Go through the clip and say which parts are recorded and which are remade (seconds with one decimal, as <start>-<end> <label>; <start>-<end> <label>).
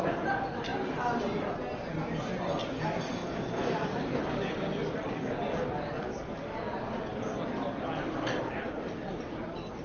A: 0.0-0.7 recorded; 0.7-1.5 remade; 1.5-3.2 recorded; 3.2-4.2 remade; 4.2-9.8 recorded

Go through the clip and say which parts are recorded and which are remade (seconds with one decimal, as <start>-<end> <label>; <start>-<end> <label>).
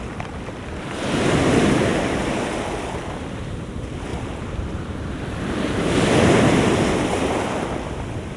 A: 0.0-4.1 recorded; 4.1-5.1 remade; 5.1-8.4 recorded